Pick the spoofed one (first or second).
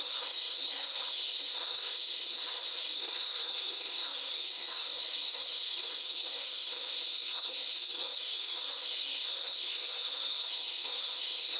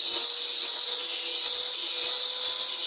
first